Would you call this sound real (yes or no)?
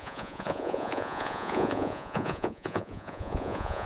no